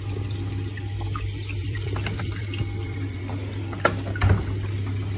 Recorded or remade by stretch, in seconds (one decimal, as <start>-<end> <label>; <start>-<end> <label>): 0.0-1.6 recorded; 1.6-3.2 remade; 3.2-5.2 recorded